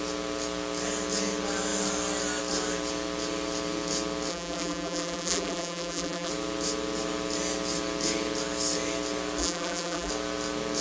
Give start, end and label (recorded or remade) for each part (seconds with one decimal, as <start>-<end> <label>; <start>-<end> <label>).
0.0-4.3 recorded; 4.3-6.3 remade; 6.3-9.4 recorded; 9.4-10.1 remade; 10.1-10.8 recorded

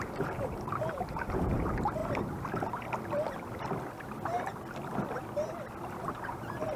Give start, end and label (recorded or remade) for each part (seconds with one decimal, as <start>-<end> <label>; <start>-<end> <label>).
0.0-2.0 remade; 2.0-6.1 recorded; 6.1-6.8 remade

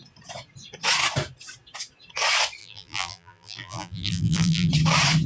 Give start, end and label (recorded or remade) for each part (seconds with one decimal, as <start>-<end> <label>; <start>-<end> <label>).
0.0-2.6 recorded; 2.6-4.7 remade; 4.7-5.3 recorded

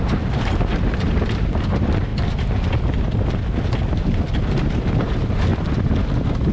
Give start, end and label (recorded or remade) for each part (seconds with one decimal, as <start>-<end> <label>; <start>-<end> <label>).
0.0-2.1 remade; 2.1-4.5 recorded; 4.5-5.5 remade; 5.5-6.5 recorded

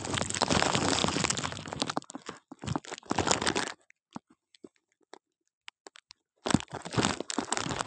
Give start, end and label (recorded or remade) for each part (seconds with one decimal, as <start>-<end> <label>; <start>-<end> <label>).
0.0-7.9 recorded